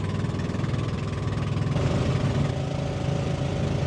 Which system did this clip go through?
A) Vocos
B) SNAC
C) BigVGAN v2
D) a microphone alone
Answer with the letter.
D